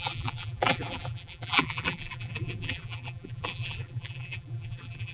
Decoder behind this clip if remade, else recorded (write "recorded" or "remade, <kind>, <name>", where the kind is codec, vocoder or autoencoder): remade, vocoder, BigVGAN v2